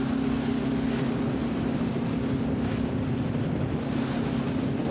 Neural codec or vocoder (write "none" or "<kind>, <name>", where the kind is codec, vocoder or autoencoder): none